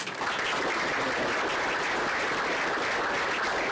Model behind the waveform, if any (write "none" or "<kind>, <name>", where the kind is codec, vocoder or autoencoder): none